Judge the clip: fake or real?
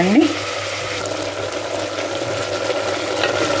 real